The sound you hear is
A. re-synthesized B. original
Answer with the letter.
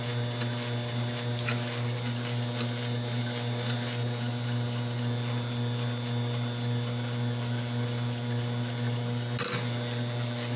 B